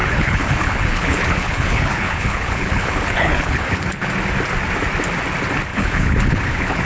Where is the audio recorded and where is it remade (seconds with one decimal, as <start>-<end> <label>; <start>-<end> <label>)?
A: 0.0-4.1 remade; 4.1-5.7 recorded; 5.7-6.9 remade